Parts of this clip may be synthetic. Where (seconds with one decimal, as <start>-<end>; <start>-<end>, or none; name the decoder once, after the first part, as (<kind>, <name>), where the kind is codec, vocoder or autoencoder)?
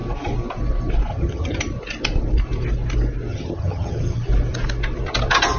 1.1-1.6 (vocoder, HiFi-GAN); 3.3-4.2